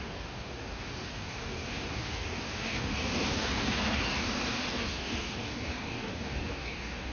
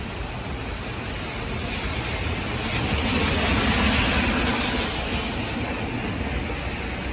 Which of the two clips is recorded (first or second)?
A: second